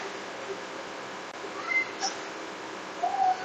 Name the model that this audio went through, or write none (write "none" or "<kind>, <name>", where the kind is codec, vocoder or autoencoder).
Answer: none